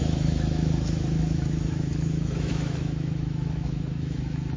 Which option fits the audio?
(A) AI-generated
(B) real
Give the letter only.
A